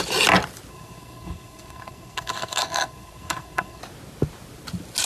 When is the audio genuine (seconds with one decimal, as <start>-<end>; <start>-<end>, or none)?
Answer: 0.0-0.7; 3.8-5.1